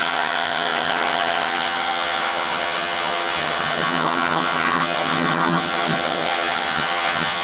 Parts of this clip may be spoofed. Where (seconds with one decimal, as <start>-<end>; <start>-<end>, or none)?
0.0-7.4